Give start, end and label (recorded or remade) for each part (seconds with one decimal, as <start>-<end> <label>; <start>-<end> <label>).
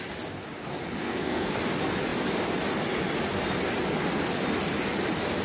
0.0-1.0 recorded; 1.0-1.6 remade; 1.6-5.4 recorded